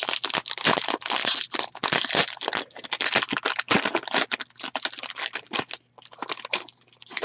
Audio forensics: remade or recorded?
recorded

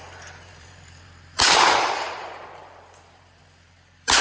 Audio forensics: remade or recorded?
remade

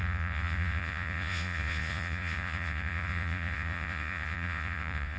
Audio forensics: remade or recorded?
remade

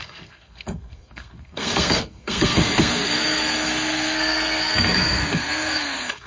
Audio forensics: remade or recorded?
remade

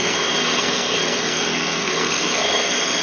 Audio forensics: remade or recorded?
remade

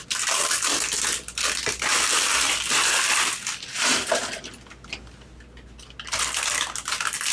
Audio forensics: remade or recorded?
recorded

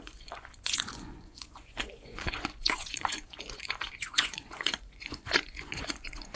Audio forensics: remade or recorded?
remade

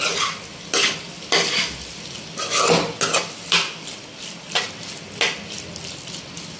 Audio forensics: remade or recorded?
recorded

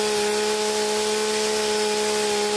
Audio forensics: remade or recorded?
recorded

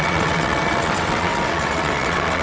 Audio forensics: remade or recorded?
remade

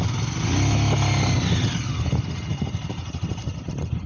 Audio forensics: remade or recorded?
recorded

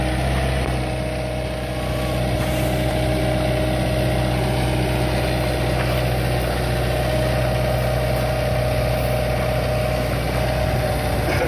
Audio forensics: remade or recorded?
recorded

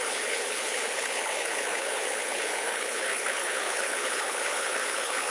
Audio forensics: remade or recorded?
remade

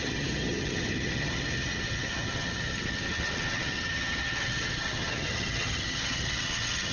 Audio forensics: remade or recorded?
remade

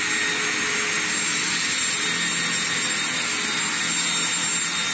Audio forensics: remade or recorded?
recorded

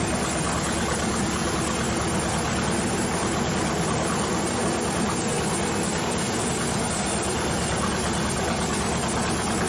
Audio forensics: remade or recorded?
recorded